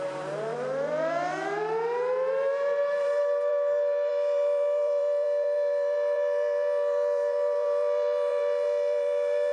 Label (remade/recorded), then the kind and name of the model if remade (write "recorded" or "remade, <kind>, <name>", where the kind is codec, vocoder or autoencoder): remade, vocoder, BigVGAN v2